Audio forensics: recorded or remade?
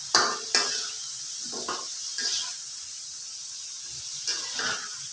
recorded